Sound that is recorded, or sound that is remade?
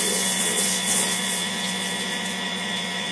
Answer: remade